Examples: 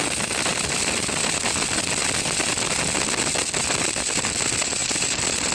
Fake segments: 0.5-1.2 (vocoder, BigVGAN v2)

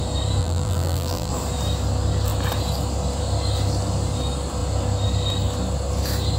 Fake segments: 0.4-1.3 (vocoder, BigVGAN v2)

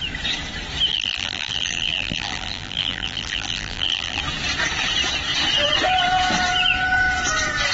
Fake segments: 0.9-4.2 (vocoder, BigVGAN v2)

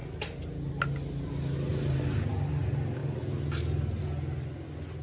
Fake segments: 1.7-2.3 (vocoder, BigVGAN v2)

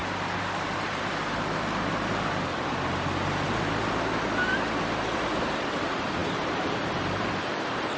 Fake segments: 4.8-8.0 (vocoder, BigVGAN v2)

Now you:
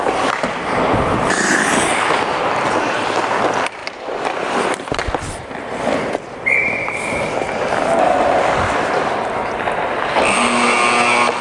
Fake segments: 3.8-7.1 (vocoder, BigVGAN v2)

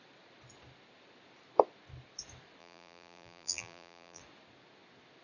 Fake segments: 2.6-4.2 (vocoder, BigVGAN v2)

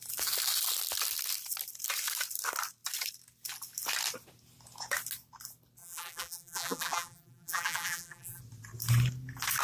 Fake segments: 5.8-8.4 (vocoder, BigVGAN v2)